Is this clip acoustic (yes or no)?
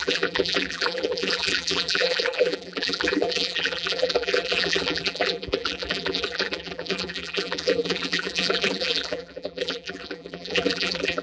no